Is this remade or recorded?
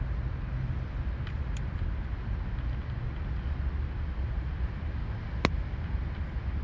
recorded